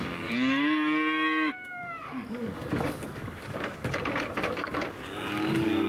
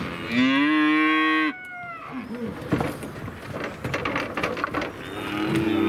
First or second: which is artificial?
first